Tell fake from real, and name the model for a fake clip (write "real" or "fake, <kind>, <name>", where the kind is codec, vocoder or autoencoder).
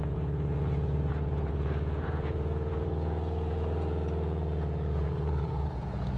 fake, vocoder, Vocos